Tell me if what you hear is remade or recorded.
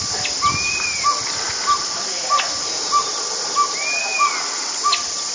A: recorded